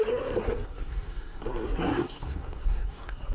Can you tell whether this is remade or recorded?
remade